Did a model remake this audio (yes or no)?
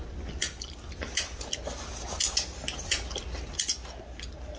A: no